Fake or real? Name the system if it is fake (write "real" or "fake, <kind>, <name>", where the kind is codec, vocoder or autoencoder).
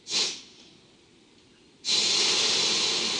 real